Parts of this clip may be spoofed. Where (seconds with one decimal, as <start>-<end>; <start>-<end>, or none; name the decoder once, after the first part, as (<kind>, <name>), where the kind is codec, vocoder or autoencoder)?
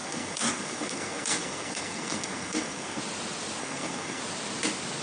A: 0.0-3.0 (codec, SNAC); 3.6-4.2